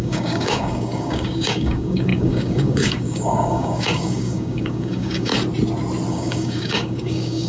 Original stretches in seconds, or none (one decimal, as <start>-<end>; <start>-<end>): 5.3-6.1